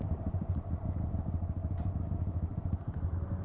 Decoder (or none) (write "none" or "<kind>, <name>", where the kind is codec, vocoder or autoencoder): none